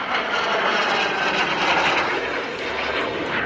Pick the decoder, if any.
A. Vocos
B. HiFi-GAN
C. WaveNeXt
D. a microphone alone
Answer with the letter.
D